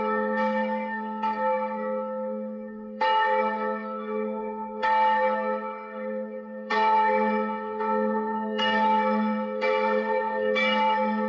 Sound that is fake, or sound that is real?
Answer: fake